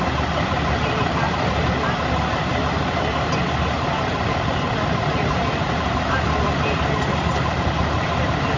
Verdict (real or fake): real